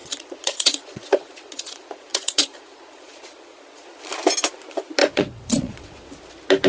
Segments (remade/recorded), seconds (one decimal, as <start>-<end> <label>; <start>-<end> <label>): 0.0-4.0 remade; 4.0-5.0 recorded; 5.0-6.1 remade; 6.1-6.7 recorded

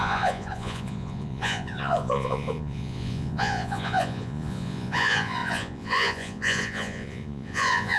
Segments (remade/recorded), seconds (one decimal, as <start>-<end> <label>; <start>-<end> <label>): 0.0-8.0 remade

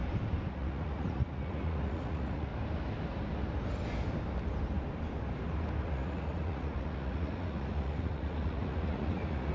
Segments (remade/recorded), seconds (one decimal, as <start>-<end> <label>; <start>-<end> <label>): 0.0-0.5 recorded; 0.5-2.5 remade; 2.5-5.8 recorded; 5.8-9.5 remade

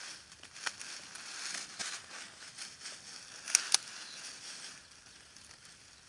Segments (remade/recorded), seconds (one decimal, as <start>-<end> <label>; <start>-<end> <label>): 0.0-6.1 recorded

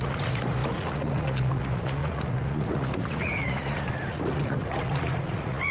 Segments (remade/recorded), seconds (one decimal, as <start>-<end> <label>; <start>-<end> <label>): 0.0-5.7 remade

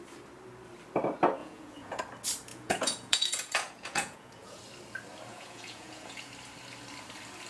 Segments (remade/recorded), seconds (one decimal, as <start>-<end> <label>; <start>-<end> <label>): 0.0-1.4 recorded; 1.4-2.0 remade; 2.0-2.5 recorded; 2.5-4.6 remade; 4.6-5.3 recorded; 5.3-6.3 remade; 6.3-7.5 recorded

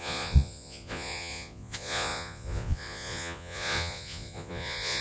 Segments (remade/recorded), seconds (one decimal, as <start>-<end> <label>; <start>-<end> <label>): 0.0-5.0 remade

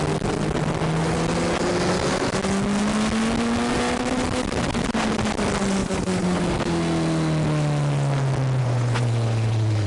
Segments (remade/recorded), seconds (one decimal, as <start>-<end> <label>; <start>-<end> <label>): 0.0-5.8 recorded; 5.8-6.4 remade; 6.4-8.6 recorded; 8.6-9.9 remade